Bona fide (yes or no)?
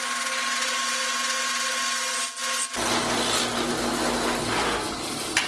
yes